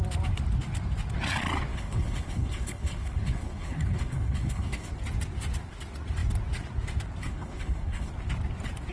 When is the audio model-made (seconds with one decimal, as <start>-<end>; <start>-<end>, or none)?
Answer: 1.7-4.9; 7.2-8.1